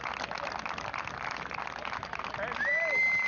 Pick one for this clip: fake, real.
real